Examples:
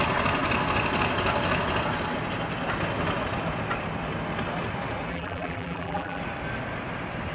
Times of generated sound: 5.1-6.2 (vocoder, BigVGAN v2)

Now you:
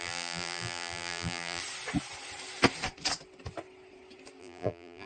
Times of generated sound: 0.0-1.6 (vocoder, BigVGAN v2); 4.4-5.1

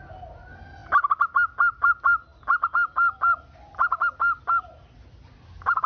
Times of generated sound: none

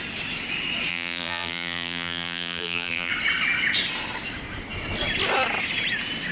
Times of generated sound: 0.9-3.1 (vocoder, BigVGAN v2)

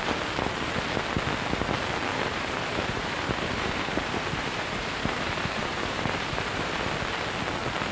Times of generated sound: 2.1-6.8 (vocoder, BigVGAN v2)